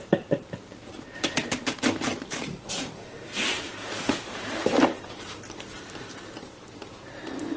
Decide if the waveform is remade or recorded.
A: remade